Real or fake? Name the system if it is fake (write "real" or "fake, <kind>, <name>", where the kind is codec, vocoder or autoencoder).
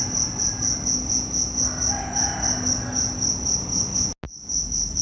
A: real